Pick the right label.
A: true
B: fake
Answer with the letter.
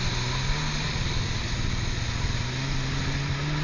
A